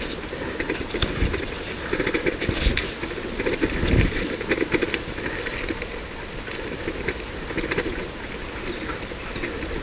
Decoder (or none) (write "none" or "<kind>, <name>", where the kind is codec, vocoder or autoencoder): none